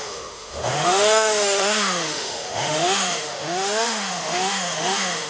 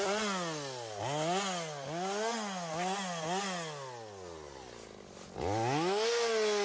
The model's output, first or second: first